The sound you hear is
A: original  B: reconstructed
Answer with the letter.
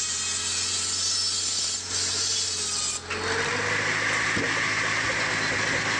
A